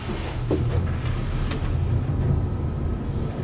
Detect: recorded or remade recorded